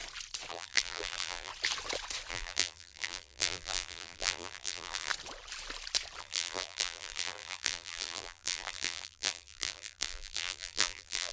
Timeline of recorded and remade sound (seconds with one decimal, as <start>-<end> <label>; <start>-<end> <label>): 0.0-0.5 recorded; 0.5-1.5 remade; 1.5-2.3 recorded; 2.3-5.1 remade; 5.1-6.2 recorded; 6.2-11.3 remade